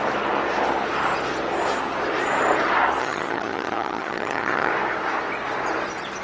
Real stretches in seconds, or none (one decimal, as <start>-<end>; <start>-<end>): 0.0-3.0; 4.7-6.2